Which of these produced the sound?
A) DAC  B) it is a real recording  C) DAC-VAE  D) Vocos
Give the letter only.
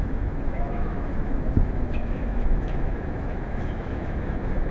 C